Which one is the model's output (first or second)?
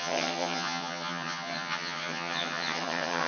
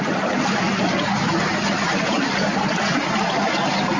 first